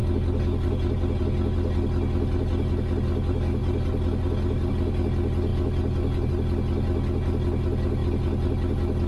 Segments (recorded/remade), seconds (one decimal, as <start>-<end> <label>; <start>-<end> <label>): 0.0-9.1 recorded